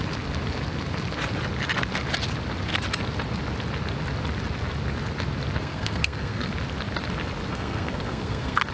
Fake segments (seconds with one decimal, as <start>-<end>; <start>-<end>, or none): 5.6-6.5; 7.5-8.7